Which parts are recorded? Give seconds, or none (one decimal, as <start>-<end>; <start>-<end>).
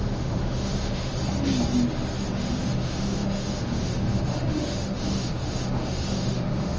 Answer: 1.1-2.3